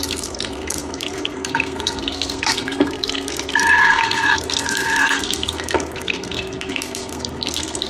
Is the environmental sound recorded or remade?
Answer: remade